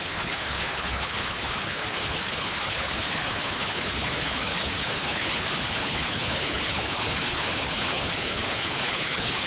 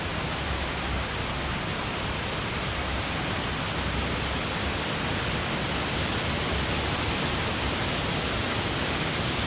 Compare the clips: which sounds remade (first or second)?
first